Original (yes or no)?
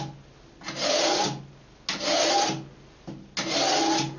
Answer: yes